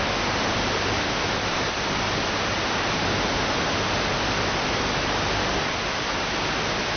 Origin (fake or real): real